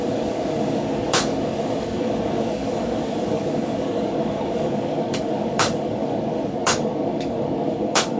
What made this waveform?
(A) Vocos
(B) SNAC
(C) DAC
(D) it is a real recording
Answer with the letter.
C